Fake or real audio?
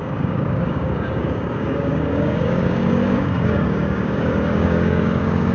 fake